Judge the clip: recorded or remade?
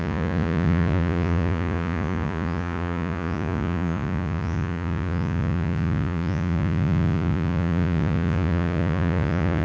remade